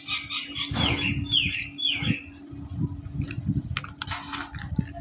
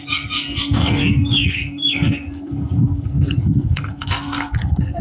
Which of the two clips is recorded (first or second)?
first